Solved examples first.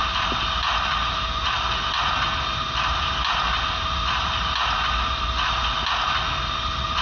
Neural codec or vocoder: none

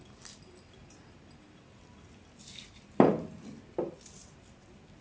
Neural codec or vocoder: none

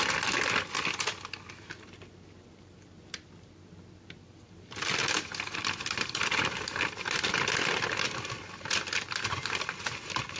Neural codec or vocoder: vocoder, BigVGAN v2